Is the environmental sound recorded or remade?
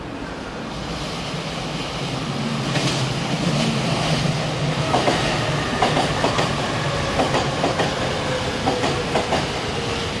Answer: recorded